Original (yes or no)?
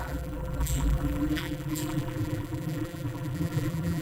no